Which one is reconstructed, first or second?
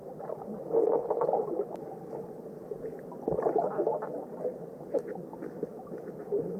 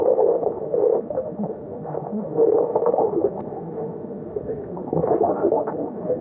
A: second